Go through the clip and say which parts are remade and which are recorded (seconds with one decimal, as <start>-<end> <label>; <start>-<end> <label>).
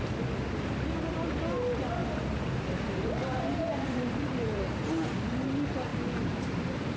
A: 0.0-2.0 recorded; 2.0-4.6 remade; 4.6-5.9 recorded; 5.9-7.0 remade